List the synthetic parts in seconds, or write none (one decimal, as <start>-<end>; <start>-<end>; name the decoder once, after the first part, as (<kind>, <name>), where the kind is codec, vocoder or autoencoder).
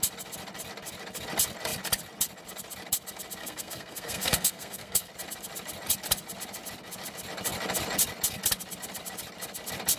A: 3.4-5.1 (codec, SNAC)